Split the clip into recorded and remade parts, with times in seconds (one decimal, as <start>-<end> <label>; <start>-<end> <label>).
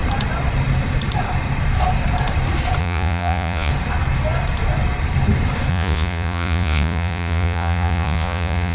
0.0-2.8 recorded; 2.8-3.7 remade; 3.7-5.7 recorded; 5.7-8.7 remade